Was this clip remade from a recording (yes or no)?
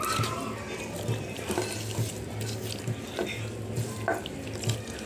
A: no